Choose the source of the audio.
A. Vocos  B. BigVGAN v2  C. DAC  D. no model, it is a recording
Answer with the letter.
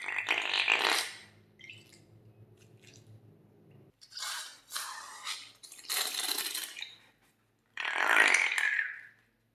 D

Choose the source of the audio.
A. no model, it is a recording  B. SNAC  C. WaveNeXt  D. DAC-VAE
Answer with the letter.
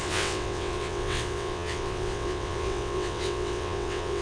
C